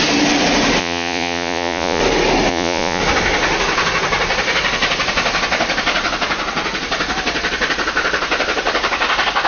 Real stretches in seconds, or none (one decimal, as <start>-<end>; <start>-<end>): 0.0-0.8; 2.0-2.5; 3.0-9.5